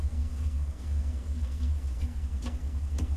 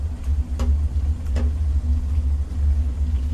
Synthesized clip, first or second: first